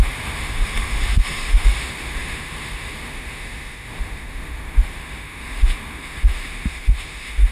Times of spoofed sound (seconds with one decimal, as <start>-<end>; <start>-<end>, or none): 0.0-7.5